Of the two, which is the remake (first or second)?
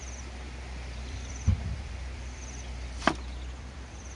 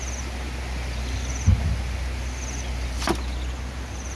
first